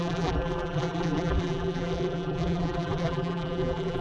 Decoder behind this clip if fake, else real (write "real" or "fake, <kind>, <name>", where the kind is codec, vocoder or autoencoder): fake, vocoder, BigVGAN v2